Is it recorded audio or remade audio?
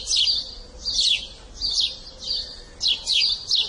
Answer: recorded